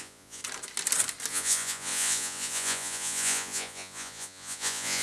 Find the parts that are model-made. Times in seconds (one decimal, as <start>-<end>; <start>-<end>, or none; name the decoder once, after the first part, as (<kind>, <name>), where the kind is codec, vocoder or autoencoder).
0.0-0.4 (vocoder, Vocos); 1.3-5.0